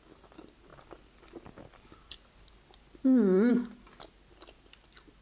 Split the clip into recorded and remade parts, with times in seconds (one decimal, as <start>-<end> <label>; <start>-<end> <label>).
0.0-5.2 recorded